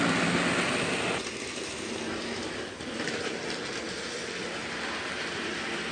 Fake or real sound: real